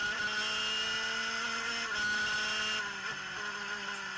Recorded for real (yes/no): yes